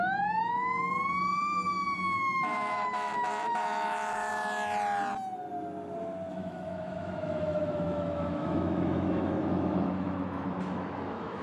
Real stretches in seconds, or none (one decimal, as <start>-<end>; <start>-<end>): 4.3-6.3